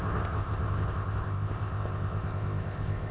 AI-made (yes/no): yes